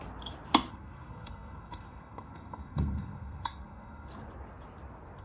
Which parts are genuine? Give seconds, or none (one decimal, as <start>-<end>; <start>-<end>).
0.0-0.7; 4.1-5.2